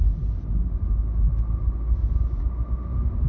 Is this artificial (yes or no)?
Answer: no